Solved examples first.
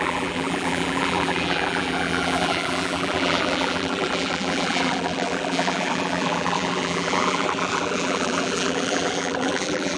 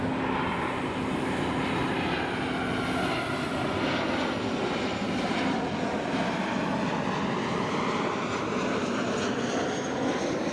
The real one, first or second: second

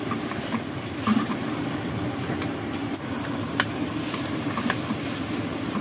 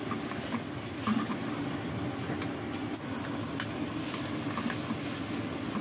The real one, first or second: second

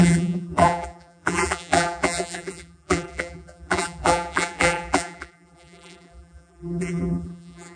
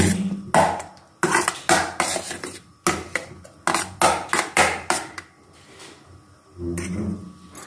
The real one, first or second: second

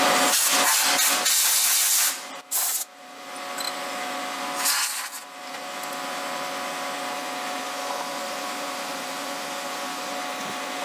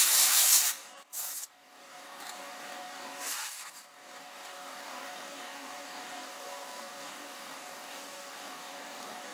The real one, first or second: first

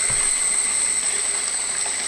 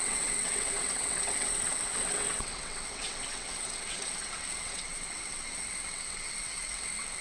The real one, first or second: first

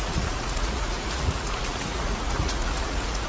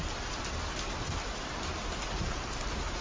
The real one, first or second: second